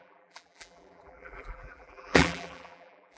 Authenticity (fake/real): fake